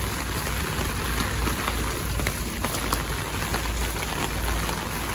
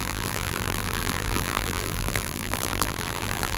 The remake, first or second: second